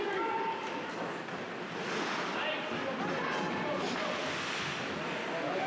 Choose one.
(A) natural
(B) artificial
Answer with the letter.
A